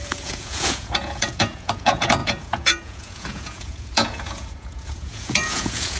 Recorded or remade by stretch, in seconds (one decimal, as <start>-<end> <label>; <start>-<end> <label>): 0.0-6.0 remade